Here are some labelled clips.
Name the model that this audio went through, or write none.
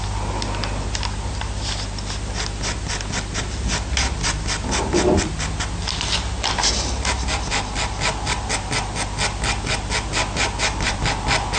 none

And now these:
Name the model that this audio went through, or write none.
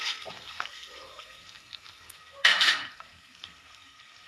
codec, SNAC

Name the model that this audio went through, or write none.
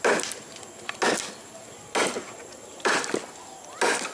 none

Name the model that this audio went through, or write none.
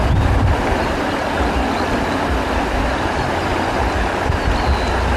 none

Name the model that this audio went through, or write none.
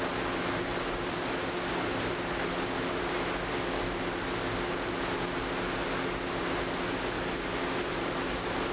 none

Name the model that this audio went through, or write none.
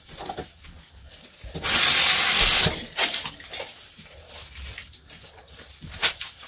none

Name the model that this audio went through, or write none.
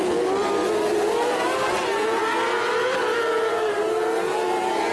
none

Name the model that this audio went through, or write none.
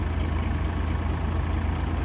none